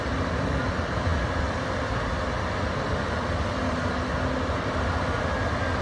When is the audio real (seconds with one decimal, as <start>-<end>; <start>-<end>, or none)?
0.0-5.8